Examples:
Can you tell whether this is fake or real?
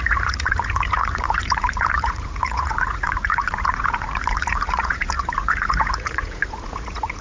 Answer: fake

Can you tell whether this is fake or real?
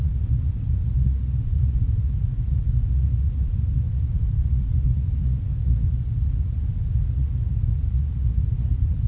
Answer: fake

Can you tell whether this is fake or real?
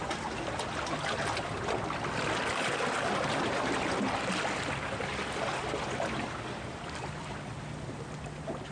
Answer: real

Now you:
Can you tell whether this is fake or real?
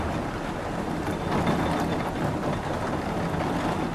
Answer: real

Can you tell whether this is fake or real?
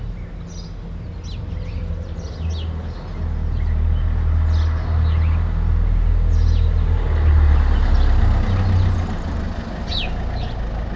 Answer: real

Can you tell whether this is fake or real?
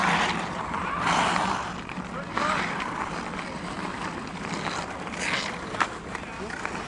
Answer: real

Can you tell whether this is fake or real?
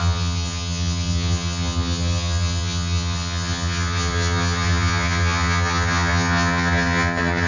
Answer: fake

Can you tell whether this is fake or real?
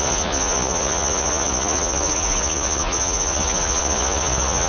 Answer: fake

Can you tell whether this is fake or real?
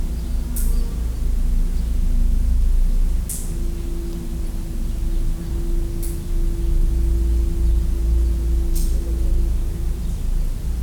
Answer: real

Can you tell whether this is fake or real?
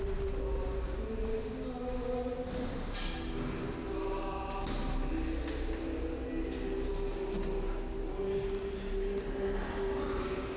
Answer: real